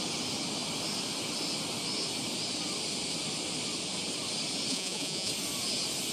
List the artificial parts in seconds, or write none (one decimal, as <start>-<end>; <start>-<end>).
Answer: 4.7-5.3